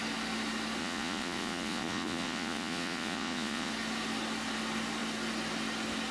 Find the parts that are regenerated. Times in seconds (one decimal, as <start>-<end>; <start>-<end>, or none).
0.8-3.7